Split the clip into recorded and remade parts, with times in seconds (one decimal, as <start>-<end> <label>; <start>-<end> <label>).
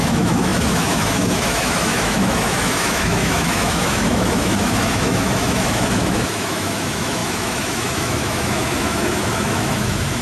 0.0-10.2 remade